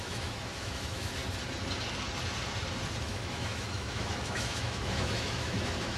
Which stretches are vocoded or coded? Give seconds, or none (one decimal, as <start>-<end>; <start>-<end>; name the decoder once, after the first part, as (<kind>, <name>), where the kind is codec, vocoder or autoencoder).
0.0-1.2 (autoencoder, DAC-VAE); 3.0-6.0